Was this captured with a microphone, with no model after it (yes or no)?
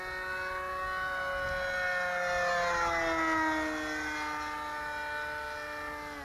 yes